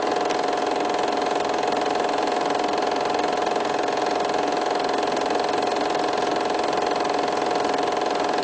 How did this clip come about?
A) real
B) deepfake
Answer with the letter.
A